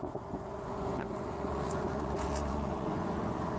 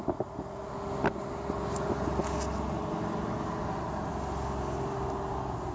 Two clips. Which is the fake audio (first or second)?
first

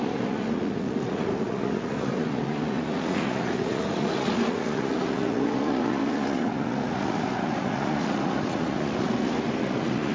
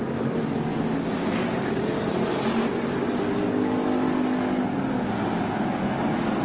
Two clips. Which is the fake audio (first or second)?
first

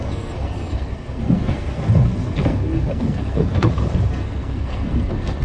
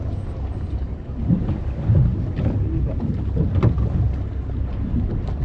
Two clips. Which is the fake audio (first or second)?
first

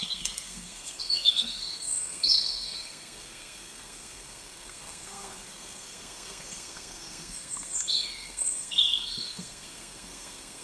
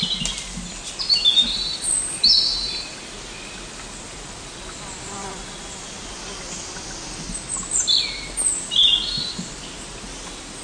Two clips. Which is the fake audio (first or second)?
first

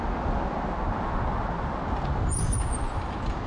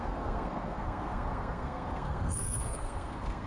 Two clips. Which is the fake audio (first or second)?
second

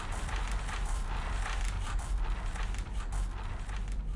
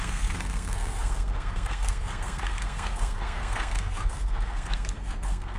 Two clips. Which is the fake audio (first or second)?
second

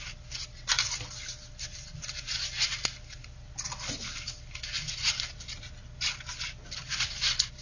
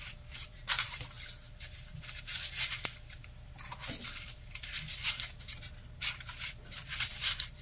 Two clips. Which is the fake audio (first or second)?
second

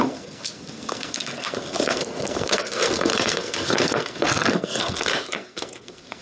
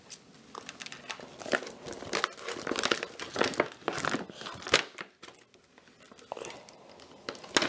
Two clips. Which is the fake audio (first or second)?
first